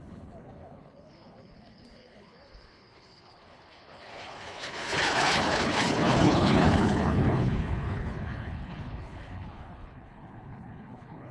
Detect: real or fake fake